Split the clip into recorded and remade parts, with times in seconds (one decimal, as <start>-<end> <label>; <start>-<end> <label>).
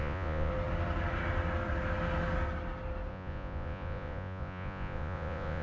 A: 0.0-0.5 remade; 0.5-3.1 recorded; 3.1-5.6 remade